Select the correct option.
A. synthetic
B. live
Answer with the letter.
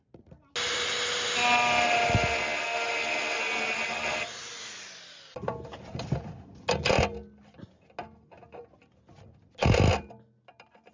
B